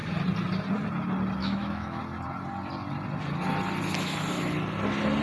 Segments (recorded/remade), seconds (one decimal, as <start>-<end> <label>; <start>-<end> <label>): 0.0-1.4 recorded; 1.4-2.0 remade; 2.0-5.2 recorded